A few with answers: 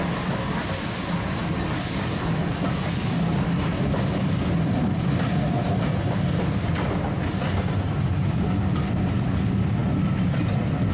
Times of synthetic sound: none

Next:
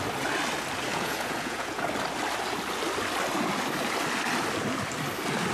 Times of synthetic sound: 0.9-1.8 (vocoder, Vocos)

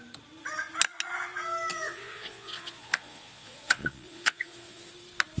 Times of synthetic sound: 1.7-4.9 (vocoder, Vocos)

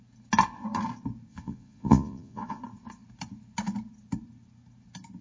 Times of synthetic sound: 1.3-2.6 (vocoder, Vocos)

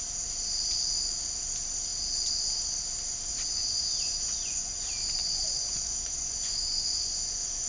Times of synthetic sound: 3.6-4.8 (vocoder, Vocos); 5.2-7.7